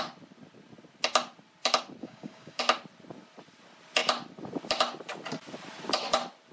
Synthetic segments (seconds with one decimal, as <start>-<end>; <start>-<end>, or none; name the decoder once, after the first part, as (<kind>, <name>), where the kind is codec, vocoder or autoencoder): 2.0-2.6 (codec, DAC)